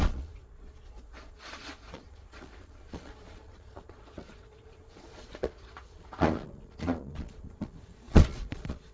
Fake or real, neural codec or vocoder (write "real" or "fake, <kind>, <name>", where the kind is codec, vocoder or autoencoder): fake, vocoder, Vocos